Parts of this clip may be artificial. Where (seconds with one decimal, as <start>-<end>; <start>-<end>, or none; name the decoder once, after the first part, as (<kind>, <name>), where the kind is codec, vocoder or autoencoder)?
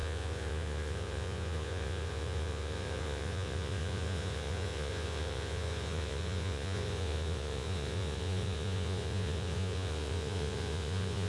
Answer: 0.0-11.3 (vocoder, Vocos)